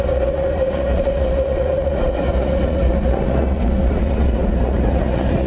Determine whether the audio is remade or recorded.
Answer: remade